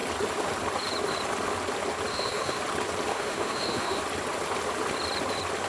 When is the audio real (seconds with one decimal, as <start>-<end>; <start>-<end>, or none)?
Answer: 0.0-2.1; 2.6-3.1; 4.0-5.7